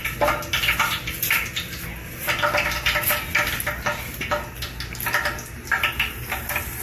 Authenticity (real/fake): real